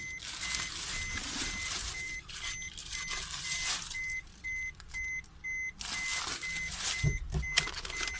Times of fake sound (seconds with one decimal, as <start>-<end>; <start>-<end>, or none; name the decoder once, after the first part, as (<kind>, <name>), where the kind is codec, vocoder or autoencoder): 1.8-2.4 (vocoder, BigVGAN v2)